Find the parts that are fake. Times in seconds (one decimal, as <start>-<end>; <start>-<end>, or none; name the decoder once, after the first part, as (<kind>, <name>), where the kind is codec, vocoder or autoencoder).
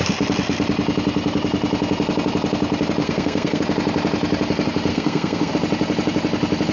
3.0-3.6 (codec, SNAC); 4.9-5.5